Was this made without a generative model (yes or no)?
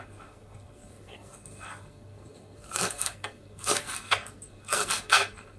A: no